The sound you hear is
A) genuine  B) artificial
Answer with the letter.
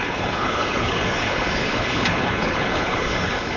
B